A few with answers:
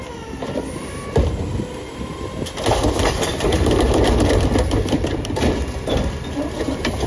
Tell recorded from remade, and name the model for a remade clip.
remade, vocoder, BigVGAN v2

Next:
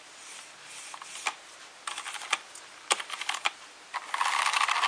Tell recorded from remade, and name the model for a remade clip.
recorded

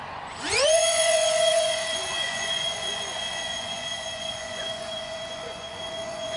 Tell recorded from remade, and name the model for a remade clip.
remade, vocoder, Vocos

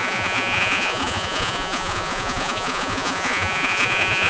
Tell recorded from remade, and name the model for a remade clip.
remade, vocoder, Vocos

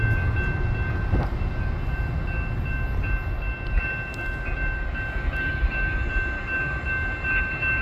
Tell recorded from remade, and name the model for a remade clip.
recorded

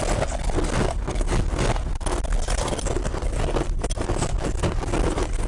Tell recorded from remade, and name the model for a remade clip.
recorded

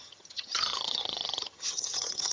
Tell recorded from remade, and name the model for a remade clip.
remade, vocoder, HiFi-GAN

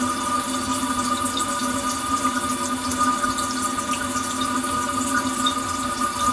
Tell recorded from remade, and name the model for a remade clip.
recorded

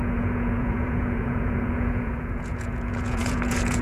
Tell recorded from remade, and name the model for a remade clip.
remade, vocoder, Vocos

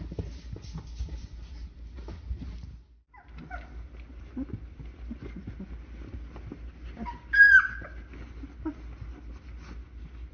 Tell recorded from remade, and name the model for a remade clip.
recorded